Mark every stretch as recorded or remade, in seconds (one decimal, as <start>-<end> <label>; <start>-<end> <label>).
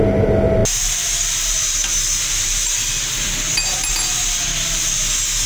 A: 0.0-5.5 recorded